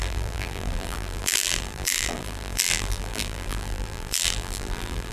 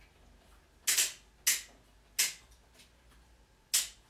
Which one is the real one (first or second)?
second